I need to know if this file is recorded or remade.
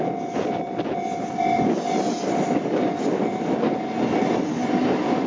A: recorded